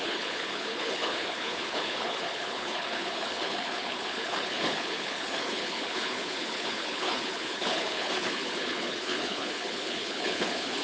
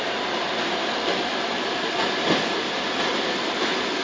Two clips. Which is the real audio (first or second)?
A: second